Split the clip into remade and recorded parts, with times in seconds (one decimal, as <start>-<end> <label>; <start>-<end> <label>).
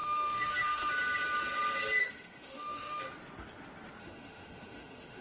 0.0-0.9 remade; 0.9-2.0 recorded; 2.0-3.0 remade; 3.0-4.0 recorded; 4.0-5.2 remade